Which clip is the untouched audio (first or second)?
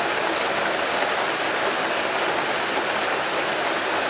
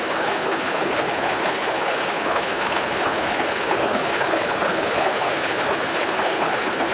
first